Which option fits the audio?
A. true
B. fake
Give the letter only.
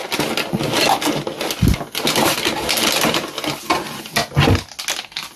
A